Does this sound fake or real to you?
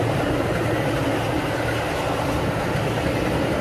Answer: real